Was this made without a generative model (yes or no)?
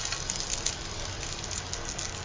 yes